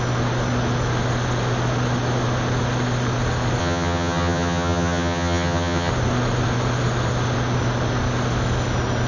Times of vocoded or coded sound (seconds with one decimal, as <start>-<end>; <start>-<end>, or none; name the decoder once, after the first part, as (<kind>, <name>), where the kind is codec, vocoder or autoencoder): 3.6-5.9 (vocoder, HiFi-GAN)